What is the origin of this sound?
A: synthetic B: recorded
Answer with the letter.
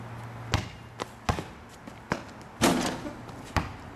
B